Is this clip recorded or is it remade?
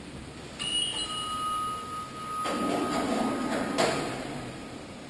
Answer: recorded